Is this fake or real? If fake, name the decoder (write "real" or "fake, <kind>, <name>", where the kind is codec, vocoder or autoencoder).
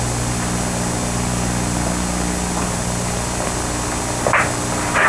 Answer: real